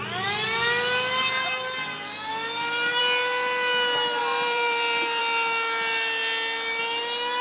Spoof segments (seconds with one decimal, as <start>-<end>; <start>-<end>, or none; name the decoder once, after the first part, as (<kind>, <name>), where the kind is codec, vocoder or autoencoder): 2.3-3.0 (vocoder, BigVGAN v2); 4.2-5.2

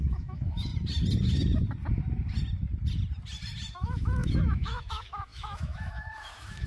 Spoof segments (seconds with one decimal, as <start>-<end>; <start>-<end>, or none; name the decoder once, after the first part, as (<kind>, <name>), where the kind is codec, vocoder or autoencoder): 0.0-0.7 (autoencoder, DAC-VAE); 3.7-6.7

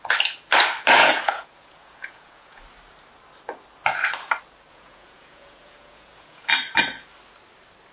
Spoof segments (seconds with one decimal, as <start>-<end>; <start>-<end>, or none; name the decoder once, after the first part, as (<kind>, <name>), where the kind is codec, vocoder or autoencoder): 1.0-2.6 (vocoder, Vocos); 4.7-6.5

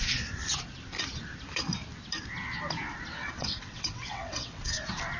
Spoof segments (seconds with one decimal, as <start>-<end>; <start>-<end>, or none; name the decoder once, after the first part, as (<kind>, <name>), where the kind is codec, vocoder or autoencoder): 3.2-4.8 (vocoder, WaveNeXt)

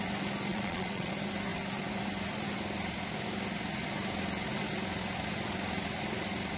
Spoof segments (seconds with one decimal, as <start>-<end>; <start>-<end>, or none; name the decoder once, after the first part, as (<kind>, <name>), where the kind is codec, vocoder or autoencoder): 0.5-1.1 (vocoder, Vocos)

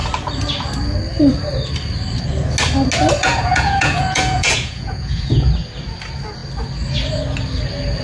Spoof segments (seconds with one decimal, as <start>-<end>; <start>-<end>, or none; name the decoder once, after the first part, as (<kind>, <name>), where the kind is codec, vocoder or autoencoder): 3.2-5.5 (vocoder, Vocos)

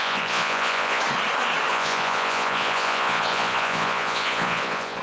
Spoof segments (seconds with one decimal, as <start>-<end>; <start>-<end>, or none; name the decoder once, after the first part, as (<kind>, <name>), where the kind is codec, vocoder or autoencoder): 0.0-1.0 (vocoder, Vocos); 1.7-5.0

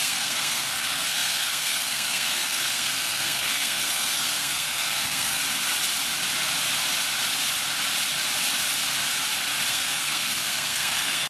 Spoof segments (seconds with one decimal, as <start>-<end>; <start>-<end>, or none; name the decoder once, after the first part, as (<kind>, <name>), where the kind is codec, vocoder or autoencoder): 0.0-5.4 (codec, SNAC); 9.7-11.3